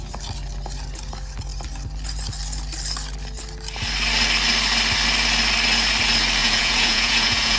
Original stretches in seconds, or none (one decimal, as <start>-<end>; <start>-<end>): 0.0-6.4